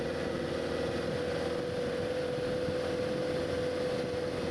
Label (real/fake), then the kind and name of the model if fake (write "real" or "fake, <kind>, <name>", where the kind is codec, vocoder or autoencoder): real